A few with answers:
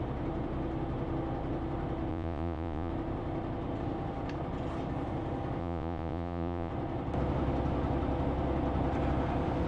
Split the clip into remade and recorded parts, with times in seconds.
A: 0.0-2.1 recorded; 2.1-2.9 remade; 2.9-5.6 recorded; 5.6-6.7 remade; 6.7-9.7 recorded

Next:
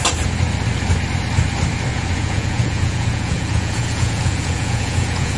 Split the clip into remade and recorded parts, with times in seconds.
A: 0.0-1.9 recorded; 1.9-5.4 remade